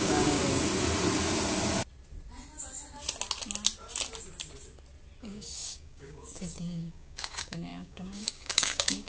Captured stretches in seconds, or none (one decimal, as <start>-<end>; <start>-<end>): 0.4-5.2